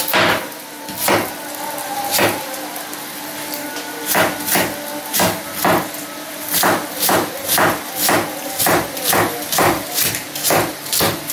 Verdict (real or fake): real